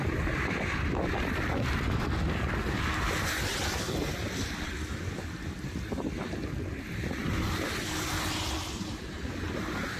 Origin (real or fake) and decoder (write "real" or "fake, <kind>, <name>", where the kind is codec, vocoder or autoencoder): real